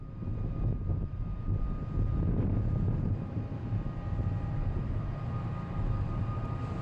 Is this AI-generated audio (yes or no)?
no